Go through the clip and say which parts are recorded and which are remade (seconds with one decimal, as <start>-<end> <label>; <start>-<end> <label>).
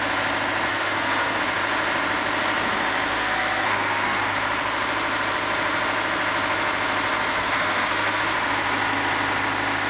0.0-0.7 recorded; 0.7-1.4 remade; 1.4-3.1 recorded; 3.1-4.2 remade; 4.2-7.3 recorded; 7.3-8.2 remade; 8.2-9.9 recorded